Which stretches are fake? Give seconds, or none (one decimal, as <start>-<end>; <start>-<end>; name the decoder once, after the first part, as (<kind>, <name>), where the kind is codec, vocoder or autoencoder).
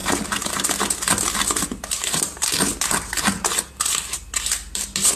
none